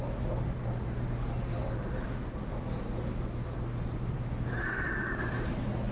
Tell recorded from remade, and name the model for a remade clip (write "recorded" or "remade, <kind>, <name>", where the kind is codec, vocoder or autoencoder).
recorded